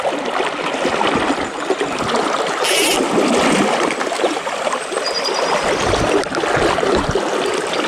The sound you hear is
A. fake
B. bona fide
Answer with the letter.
B